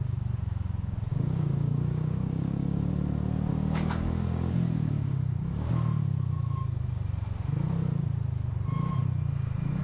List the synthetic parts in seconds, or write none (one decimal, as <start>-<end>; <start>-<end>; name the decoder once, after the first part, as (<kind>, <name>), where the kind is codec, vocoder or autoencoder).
1.1-2.9 (codec, DAC); 3.5-5.7